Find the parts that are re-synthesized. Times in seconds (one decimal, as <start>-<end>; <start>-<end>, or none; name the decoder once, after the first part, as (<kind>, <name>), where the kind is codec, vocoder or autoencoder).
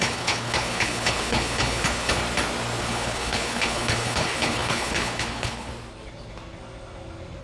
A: 0.0-2.2 (codec, HILCodec); 2.8-5.7